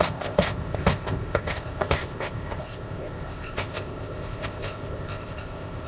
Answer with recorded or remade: remade